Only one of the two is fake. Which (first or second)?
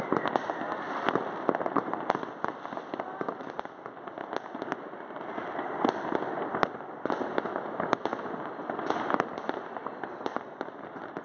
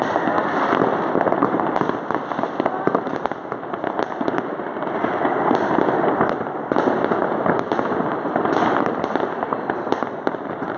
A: second